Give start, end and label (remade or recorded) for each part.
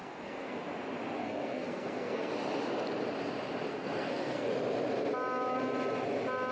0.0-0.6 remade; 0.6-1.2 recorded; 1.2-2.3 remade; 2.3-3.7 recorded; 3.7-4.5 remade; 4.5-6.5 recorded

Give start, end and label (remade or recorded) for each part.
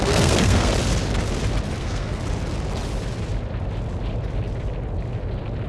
0.0-0.7 remade; 0.7-1.8 recorded; 1.8-2.2 remade; 2.2-5.7 recorded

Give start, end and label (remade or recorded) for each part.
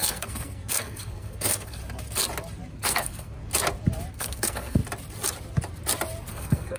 0.0-1.8 remade; 1.8-2.7 recorded; 2.7-3.4 remade; 3.4-4.1 recorded; 4.1-4.8 remade; 4.8-6.3 recorded; 6.3-6.8 remade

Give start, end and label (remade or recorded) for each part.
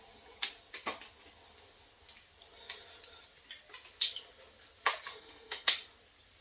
0.0-5.1 recorded; 5.1-5.7 remade; 5.7-6.4 recorded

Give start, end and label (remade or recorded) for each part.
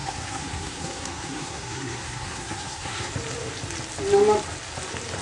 0.0-3.1 remade; 3.1-5.2 recorded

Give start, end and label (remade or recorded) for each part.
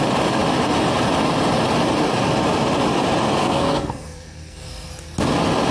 0.0-3.4 recorded; 3.4-4.9 remade; 4.9-5.7 recorded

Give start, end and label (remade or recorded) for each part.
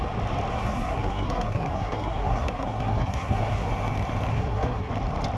0.0-0.5 recorded; 0.5-3.7 remade; 3.7-4.3 recorded; 4.3-4.9 remade; 4.9-5.4 recorded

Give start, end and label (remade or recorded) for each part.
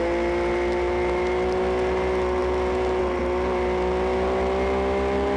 0.0-5.4 recorded